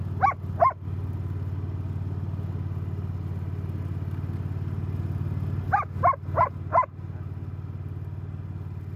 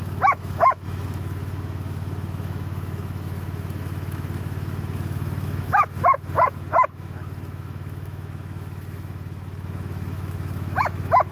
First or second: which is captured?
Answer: first